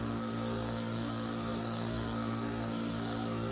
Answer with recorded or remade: remade